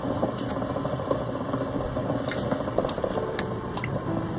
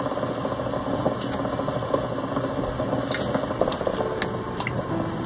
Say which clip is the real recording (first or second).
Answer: second